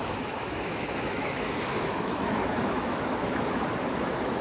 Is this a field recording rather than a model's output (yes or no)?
no